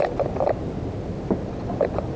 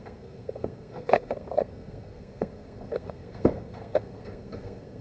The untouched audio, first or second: first